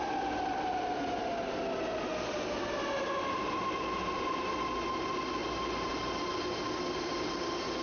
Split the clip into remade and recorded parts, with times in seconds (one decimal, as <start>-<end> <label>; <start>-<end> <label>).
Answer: 0.0-5.4 recorded; 5.4-5.9 remade; 5.9-7.8 recorded